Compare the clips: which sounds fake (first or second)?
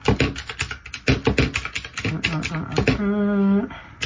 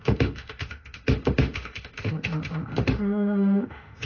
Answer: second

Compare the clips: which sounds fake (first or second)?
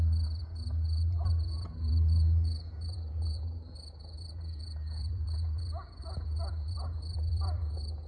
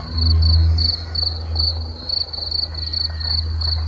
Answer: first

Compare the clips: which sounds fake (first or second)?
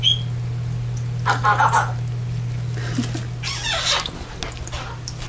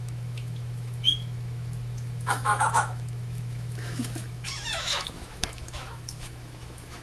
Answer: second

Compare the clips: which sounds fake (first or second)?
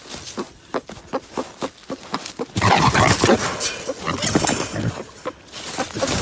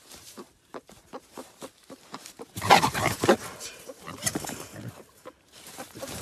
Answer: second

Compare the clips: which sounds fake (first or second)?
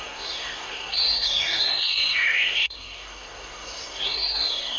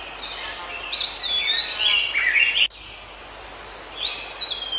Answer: first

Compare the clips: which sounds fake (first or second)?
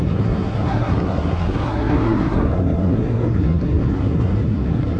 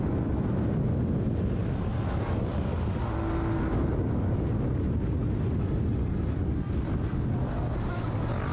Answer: first